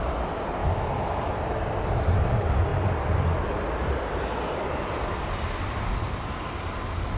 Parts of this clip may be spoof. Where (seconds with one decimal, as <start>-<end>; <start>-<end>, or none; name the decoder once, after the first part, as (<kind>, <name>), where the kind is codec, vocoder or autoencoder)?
0.6-1.3 (codec, DAC)